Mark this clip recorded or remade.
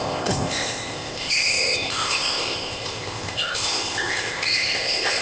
remade